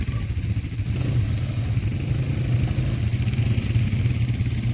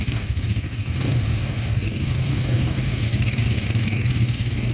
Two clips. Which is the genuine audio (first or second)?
first